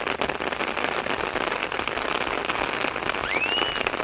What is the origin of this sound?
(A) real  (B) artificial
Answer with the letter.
A